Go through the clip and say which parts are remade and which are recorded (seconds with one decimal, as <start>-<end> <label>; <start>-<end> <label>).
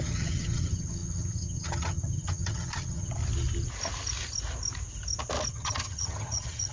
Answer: 0.0-3.2 remade; 3.2-5.5 recorded; 5.5-6.7 remade